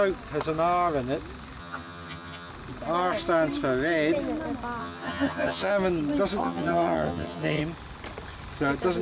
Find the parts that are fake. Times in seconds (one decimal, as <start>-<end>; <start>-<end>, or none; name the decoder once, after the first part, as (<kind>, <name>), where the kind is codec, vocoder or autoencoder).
1.6-2.5 (vocoder, HiFi-GAN); 4.8-5.7; 6.4-7.6

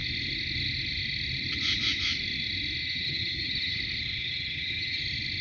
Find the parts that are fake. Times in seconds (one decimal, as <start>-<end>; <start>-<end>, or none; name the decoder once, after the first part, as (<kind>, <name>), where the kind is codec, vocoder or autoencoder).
2.8-3.8 (vocoder, HiFi-GAN); 4.2-5.0